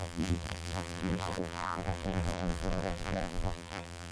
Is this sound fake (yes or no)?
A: yes